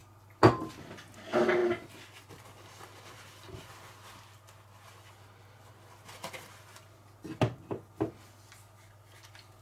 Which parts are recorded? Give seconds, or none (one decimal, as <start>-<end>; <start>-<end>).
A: 0.0-9.6